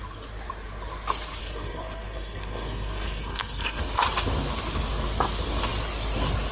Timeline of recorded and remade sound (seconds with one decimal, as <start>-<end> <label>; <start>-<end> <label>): 0.0-1.4 recorded; 1.4-3.8 remade; 3.8-6.5 recorded